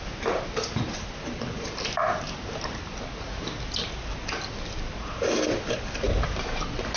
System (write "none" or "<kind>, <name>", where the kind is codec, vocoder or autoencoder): none